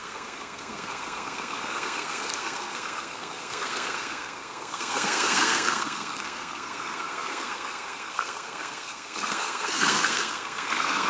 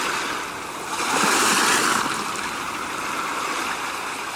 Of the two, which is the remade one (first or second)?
first